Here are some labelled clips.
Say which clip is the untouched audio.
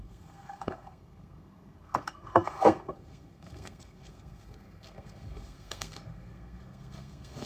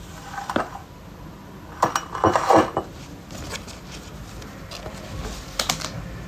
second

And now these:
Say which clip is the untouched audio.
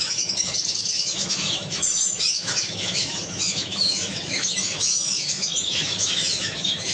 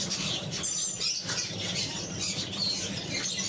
second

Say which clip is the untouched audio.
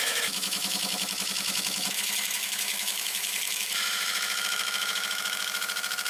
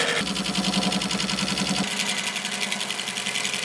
second